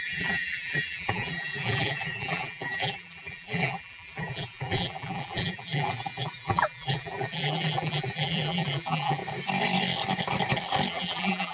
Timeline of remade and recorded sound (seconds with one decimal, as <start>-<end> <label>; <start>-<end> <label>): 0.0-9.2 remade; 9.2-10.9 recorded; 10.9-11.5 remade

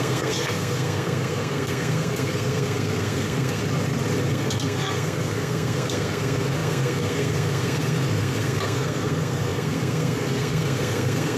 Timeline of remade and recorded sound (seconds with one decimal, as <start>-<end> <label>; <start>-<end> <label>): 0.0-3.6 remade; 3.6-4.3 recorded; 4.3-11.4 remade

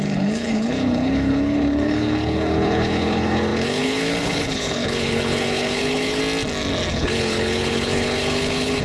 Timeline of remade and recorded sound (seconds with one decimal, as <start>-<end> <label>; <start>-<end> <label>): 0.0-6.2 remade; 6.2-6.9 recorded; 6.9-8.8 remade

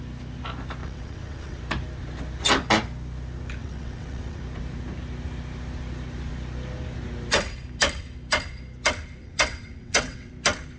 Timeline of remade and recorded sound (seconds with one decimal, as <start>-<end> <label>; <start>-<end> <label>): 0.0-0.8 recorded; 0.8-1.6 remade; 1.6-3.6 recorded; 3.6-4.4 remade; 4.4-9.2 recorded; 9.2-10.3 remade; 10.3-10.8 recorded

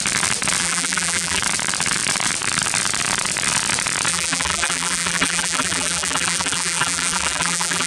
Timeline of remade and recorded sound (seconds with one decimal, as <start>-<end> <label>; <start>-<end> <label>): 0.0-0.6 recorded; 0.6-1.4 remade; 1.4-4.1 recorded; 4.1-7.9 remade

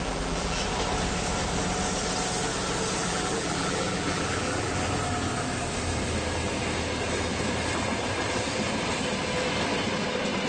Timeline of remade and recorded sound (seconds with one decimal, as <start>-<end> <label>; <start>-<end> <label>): 0.0-0.6 remade; 0.6-3.0 recorded; 3.0-4.9 remade; 4.9-10.5 recorded

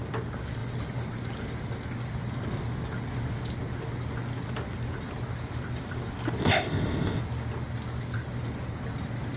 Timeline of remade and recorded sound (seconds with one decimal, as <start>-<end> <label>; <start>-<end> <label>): 0.0-6.4 recorded; 6.4-7.2 remade; 7.2-9.4 recorded

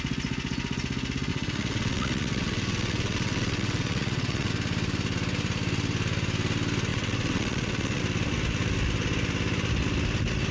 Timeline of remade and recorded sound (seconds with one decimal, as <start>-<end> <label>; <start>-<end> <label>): 0.0-1.3 recorded; 1.3-4.5 remade; 4.5-6.9 recorded; 6.9-8.0 remade; 8.0-10.5 recorded